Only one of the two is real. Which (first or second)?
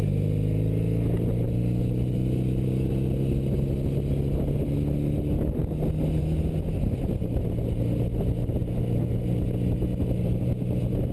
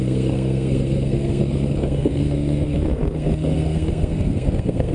first